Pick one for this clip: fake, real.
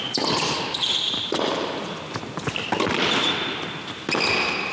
real